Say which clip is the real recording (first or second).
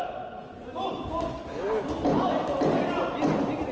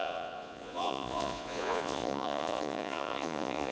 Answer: first